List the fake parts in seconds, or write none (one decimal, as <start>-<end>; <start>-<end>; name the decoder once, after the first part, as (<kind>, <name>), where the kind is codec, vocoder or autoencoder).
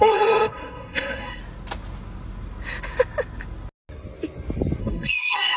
0.0-1.4 (codec, SNAC); 4.8-5.6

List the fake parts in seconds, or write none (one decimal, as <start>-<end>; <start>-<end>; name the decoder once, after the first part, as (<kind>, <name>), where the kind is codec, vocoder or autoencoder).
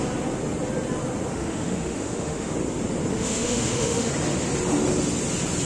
1.3-2.5 (autoencoder, DAC-VAE); 3.1-4.1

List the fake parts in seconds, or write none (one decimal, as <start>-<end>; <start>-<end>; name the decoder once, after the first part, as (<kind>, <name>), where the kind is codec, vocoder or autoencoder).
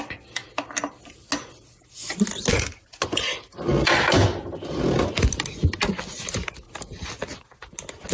none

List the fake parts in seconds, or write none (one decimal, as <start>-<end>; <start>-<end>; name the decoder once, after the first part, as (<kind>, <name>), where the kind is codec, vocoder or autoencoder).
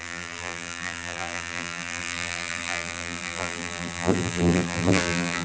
0.0-5.4 (vocoder, BigVGAN v2)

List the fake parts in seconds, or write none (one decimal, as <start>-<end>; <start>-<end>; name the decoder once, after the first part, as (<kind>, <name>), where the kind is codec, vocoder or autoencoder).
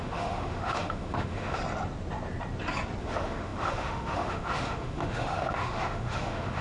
0.0-1.6 (autoencoder, DAC-VAE); 3.0-6.6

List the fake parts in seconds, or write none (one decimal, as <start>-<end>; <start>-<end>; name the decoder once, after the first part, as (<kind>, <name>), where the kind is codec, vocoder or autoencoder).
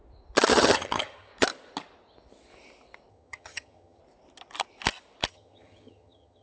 0.5-1.3 (vocoder, HiFi-GAN); 3.1-4.0; 5.3-6.4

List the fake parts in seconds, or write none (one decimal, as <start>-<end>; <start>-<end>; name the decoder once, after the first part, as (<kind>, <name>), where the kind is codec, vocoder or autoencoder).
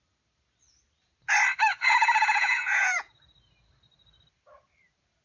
1.7-3.1 (vocoder, Vocos)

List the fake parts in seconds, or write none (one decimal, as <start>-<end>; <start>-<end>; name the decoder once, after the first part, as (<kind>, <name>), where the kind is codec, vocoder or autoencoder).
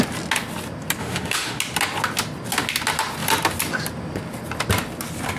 1.0-1.6 (autoencoder, DAC-VAE)